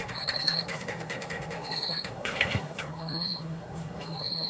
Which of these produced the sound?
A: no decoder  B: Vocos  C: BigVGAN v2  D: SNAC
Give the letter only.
D